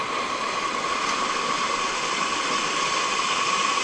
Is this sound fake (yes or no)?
no